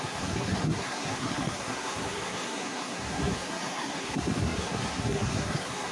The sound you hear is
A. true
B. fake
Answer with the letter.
B